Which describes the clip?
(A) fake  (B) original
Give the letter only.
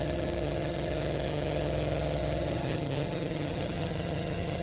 A